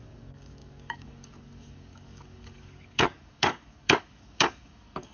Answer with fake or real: fake